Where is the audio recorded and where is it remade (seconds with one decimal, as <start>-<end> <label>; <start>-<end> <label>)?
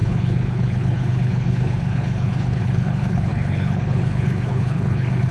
0.0-5.3 remade